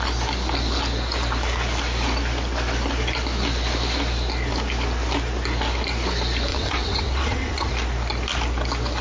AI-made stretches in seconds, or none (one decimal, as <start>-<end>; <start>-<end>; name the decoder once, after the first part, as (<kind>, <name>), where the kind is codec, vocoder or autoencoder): 6.5-7.7 (vocoder, WaveNeXt)